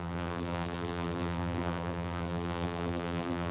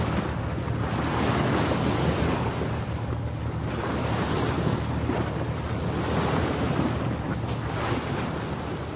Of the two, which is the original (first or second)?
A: second